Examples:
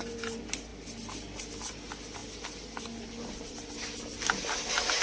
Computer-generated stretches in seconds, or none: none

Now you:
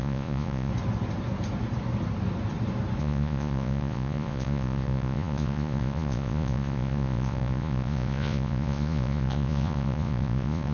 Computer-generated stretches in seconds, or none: 0.0-0.7 (vocoder, Vocos); 3.0-10.7

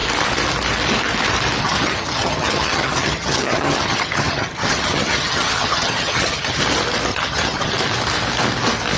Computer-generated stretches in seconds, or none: 1.6-6.6 (vocoder, HiFi-GAN); 7.1-7.7

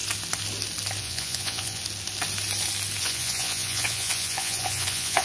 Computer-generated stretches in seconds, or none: 1.0-1.8 (vocoder, Vocos); 3.0-5.2

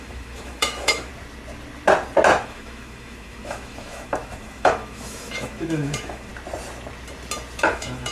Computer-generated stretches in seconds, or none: 0.0-1.1 (autoencoder, DAC-VAE); 2.4-6.3; 7.6-8.1

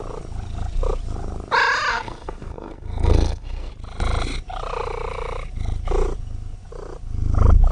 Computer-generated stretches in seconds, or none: 1.9-3.7 (codec, SNAC)